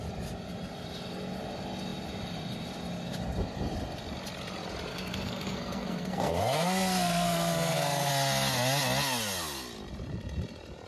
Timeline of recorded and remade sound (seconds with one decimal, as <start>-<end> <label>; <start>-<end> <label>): 0.0-4.9 recorded; 4.9-8.1 remade; 8.1-10.9 recorded